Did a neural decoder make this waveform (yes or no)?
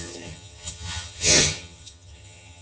yes